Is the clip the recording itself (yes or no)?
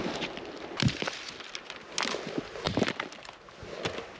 yes